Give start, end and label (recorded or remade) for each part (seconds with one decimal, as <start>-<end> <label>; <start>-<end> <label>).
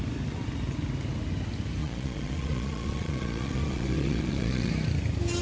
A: 0.0-1.8 recorded; 1.8-4.7 remade; 4.7-5.4 recorded